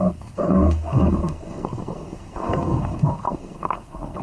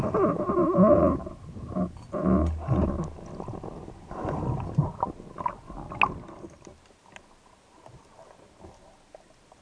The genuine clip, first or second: second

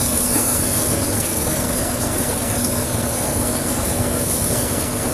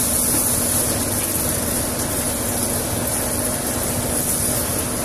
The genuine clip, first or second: second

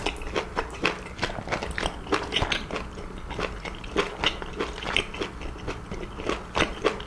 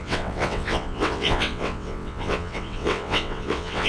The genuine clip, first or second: first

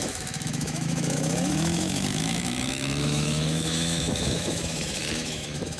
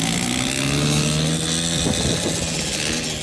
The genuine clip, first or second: second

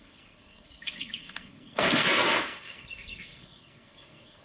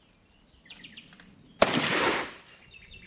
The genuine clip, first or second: second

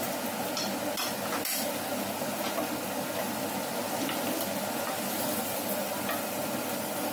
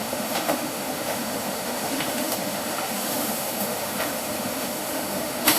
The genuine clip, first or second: first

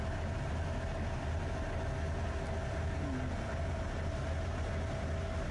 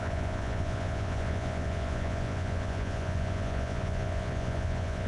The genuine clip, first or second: first